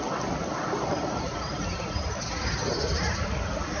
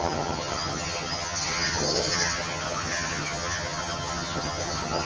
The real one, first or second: first